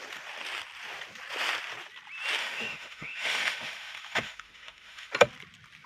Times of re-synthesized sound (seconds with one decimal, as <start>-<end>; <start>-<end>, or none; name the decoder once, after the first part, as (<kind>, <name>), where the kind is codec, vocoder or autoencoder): 2.4-5.1 (autoencoder, DAC-VAE)